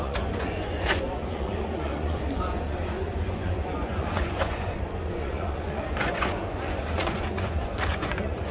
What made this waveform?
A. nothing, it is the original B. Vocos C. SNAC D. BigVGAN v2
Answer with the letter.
B